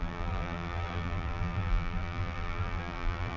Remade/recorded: remade